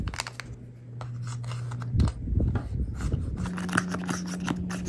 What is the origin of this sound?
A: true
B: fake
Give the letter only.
A